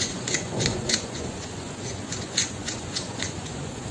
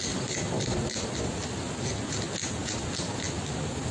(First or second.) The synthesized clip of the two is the first